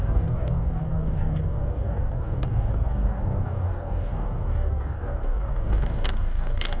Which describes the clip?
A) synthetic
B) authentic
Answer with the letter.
A